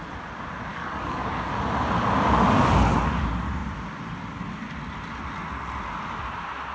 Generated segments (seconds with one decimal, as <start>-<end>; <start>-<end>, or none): 0.7-1.5